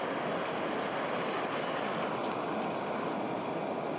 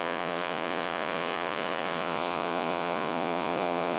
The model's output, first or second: second